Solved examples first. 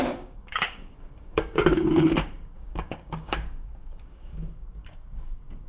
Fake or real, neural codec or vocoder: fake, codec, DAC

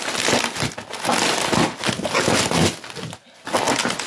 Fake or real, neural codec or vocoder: real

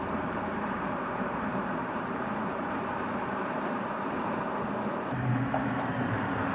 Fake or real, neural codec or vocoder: fake, vocoder, BigVGAN v2